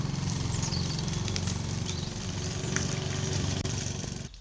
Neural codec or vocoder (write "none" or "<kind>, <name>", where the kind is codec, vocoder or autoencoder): vocoder, BigVGAN v2